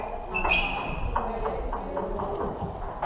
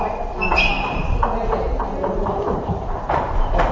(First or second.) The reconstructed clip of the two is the second